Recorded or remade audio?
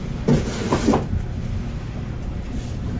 recorded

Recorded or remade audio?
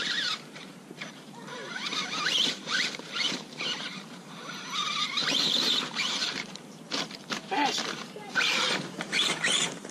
remade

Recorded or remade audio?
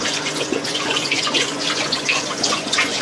remade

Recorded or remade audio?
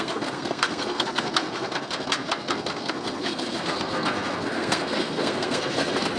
remade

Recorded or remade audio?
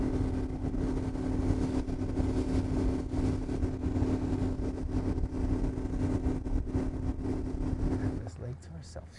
recorded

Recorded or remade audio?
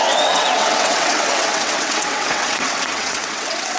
remade